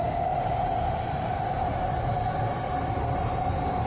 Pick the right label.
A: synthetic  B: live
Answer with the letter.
B